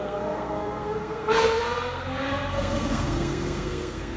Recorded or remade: remade